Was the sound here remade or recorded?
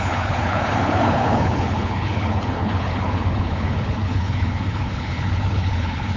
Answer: remade